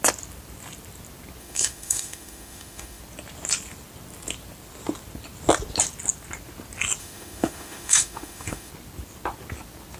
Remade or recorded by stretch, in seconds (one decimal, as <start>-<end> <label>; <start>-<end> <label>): 0.0-1.4 recorded; 1.4-3.0 remade; 3.0-7.0 recorded; 7.0-8.7 remade; 8.7-10.0 recorded